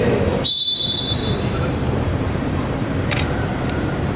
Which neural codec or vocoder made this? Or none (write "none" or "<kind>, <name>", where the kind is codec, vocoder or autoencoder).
vocoder, BigVGAN v2